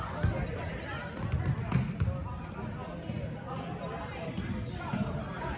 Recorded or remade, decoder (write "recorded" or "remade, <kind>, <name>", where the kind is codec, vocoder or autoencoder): recorded